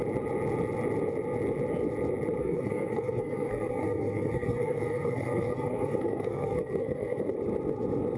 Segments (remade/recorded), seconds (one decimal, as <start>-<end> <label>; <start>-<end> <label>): 0.0-2.4 recorded; 2.4-7.3 remade; 7.3-8.2 recorded